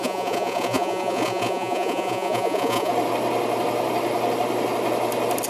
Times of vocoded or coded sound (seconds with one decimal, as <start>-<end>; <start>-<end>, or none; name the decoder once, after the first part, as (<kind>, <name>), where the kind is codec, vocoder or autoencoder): 0.0-2.9 (vocoder, Vocos)